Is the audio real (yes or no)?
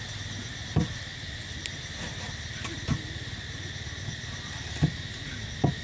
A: yes